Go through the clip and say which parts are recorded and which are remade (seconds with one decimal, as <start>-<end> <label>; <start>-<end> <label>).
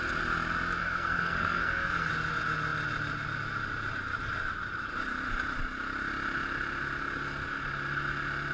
0.0-0.8 recorded; 0.8-2.1 remade; 2.1-8.5 recorded